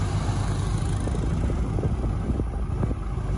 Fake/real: real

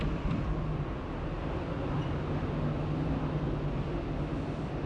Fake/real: fake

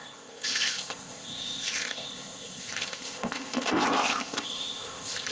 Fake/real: fake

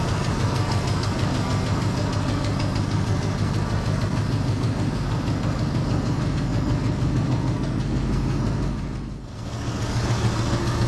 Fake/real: fake